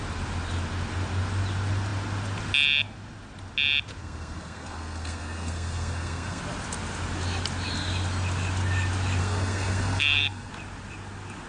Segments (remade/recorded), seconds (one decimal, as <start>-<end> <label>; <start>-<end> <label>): 0.0-4.0 recorded; 4.0-6.4 remade; 6.4-9.2 recorded; 9.2-10.5 remade; 10.5-11.5 recorded

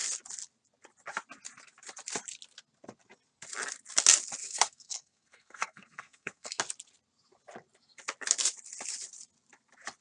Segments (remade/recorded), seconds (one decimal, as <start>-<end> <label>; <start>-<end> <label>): 0.0-4.4 recorded; 4.4-6.6 remade; 6.6-10.0 recorded

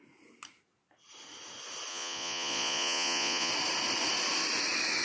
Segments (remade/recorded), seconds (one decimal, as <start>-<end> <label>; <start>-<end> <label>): 0.0-1.9 recorded; 1.9-3.5 remade; 3.5-5.0 recorded